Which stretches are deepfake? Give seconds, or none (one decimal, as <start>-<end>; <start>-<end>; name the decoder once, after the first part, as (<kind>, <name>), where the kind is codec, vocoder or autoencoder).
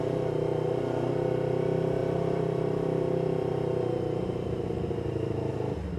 2.0-5.6 (vocoder, BigVGAN v2)